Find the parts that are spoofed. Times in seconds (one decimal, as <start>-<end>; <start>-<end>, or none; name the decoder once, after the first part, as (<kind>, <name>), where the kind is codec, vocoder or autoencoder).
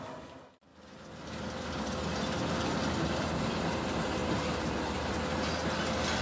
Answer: none